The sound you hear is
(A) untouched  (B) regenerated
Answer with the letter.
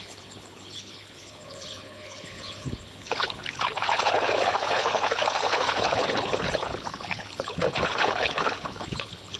B